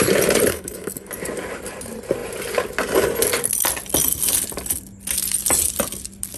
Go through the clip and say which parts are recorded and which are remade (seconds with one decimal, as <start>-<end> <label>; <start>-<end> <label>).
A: 0.0-0.5 recorded; 0.5-1.1 remade; 1.1-6.4 recorded